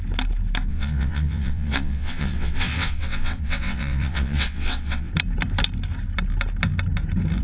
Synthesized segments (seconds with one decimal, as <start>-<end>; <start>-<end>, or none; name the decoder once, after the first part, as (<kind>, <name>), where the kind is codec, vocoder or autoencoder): 0.7-5.1 (vocoder, WaveNeXt)